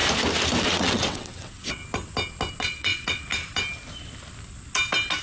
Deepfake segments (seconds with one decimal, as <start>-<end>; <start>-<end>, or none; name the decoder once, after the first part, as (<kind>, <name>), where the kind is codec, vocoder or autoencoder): 0.6-1.8 (vocoder, WaveNeXt); 2.6-3.3